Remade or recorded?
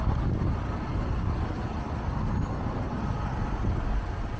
recorded